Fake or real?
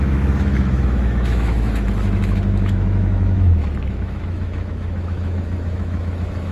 fake